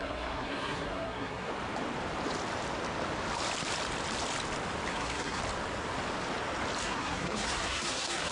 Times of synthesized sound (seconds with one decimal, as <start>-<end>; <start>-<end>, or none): 0.0-1.5; 4.9-5.4; 6.8-8.3